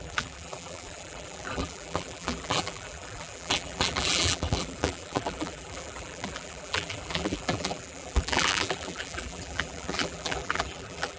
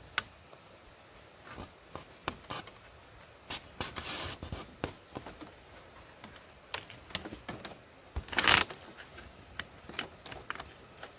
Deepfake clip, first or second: first